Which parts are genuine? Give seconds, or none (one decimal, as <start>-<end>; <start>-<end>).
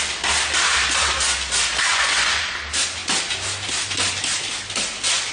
0.0-1.9; 2.4-5.3